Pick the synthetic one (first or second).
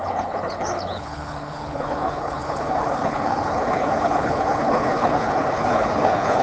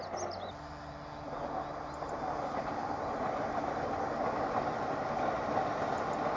first